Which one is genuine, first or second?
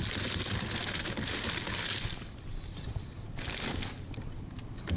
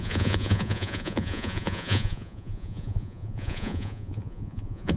first